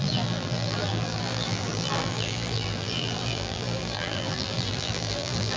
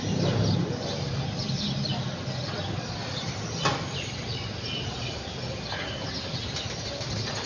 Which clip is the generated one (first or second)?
first